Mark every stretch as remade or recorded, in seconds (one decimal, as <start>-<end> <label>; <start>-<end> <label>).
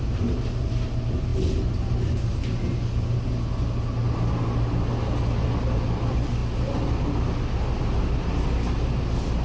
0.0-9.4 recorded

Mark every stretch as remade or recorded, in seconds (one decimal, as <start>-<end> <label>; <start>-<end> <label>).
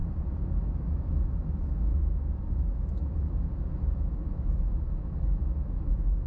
0.0-0.8 recorded; 0.8-6.3 remade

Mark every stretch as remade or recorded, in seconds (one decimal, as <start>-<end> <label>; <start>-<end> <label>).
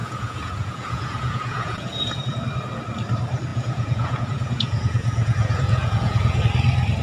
0.0-2.4 remade; 2.4-3.5 recorded; 3.5-6.4 remade; 6.4-7.0 recorded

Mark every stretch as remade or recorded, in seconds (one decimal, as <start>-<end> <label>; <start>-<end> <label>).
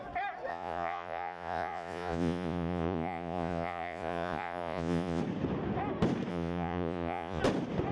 0.0-0.5 recorded; 0.5-5.2 remade; 5.2-6.3 recorded; 6.3-7.4 remade; 7.4-7.9 recorded